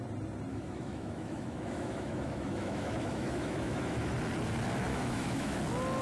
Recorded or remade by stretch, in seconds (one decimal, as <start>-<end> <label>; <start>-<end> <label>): 0.0-0.5 recorded; 0.5-4.1 remade; 4.1-4.9 recorded; 4.9-5.6 remade; 5.6-6.0 recorded